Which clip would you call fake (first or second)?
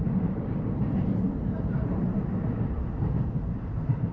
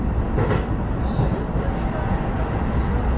first